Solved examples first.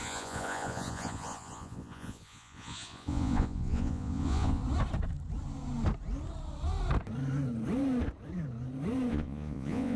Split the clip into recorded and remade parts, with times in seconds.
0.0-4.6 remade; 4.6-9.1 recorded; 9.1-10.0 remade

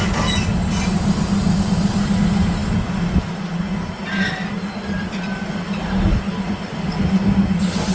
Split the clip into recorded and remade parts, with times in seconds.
0.0-7.9 recorded

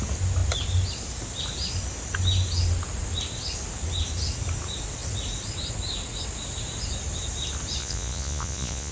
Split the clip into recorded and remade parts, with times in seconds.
0.0-7.8 recorded; 7.8-8.9 remade

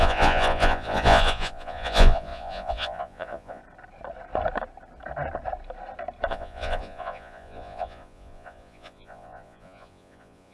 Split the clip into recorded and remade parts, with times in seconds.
0.0-3.6 remade; 3.6-6.3 recorded; 6.3-10.5 remade